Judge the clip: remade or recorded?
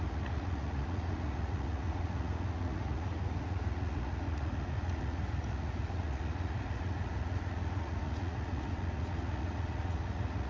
remade